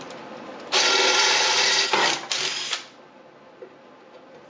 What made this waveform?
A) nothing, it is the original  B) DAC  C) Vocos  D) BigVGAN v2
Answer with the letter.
A